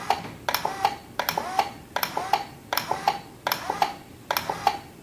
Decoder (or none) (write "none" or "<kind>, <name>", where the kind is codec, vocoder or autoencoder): none